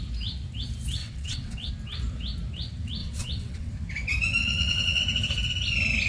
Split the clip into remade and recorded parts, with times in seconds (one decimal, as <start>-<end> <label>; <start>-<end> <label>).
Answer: 0.0-1.0 recorded; 1.0-1.7 remade; 1.7-3.0 recorded; 3.0-3.7 remade; 3.7-4.4 recorded; 4.4-5.0 remade; 5.0-6.1 recorded